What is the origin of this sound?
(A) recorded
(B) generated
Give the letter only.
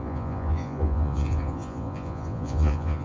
B